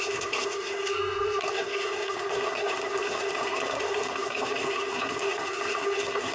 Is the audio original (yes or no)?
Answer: no